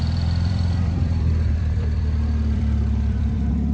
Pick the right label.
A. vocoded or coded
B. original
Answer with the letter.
A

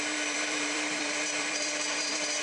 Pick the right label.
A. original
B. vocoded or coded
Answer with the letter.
B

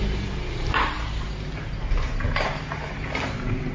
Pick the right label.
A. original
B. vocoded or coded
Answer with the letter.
B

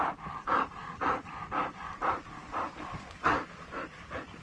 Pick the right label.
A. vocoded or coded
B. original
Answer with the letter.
A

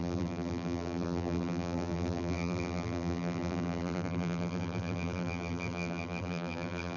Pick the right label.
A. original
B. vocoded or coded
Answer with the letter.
B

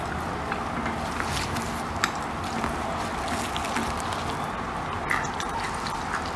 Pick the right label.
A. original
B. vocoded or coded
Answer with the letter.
A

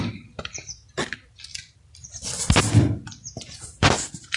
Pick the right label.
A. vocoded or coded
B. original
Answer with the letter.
A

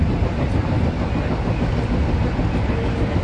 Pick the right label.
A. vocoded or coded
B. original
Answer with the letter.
B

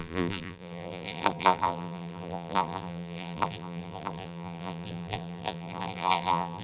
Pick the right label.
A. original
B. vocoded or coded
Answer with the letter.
B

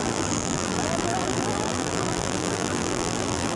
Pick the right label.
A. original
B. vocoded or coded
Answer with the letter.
B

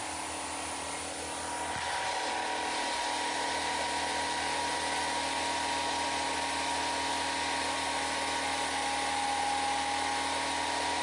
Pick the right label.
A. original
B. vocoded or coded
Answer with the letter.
A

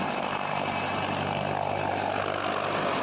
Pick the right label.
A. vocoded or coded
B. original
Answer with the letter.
B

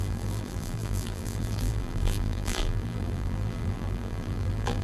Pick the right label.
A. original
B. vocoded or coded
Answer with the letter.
B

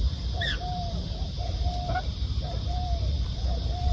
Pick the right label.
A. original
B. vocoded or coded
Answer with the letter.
B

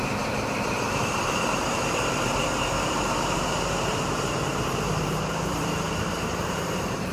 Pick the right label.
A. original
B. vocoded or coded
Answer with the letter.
B